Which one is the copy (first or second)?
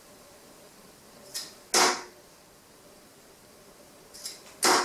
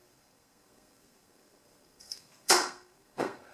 second